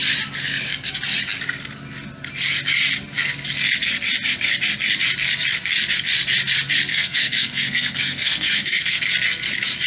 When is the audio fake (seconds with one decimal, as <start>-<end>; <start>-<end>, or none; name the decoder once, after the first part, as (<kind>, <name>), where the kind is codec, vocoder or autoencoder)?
6.9-9.0 (codec, SNAC)